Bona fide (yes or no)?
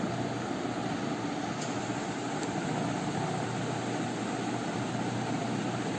yes